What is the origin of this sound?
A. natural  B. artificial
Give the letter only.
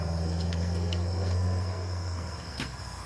B